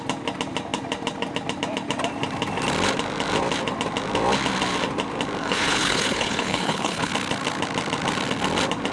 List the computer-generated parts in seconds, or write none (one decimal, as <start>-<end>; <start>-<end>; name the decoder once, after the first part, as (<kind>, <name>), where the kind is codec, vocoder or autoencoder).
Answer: 5.4-7.1 (codec, HILCodec)

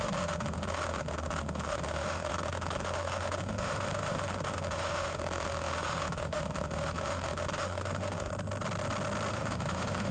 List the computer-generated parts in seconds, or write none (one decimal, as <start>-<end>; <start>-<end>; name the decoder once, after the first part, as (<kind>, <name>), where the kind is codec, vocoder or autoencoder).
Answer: 0.0-8.3 (autoencoder, DAC-VAE); 9.3-10.1

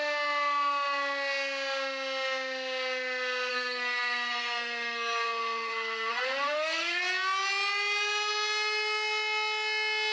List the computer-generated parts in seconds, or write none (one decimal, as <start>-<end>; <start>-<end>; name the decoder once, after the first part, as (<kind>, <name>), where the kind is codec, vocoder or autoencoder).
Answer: 3.5-7.0 (codec, SNAC)